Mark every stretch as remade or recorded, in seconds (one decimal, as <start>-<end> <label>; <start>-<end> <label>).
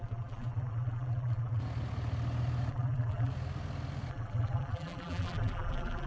0.0-1.6 remade; 1.6-2.7 recorded; 2.7-3.3 remade; 3.3-4.1 recorded; 4.1-6.1 remade